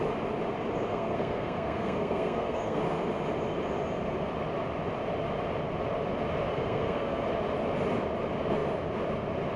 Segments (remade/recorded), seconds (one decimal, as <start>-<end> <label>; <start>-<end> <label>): 0.0-0.9 recorded; 0.9-2.8 remade; 2.8-6.5 recorded; 6.5-7.2 remade; 7.2-9.6 recorded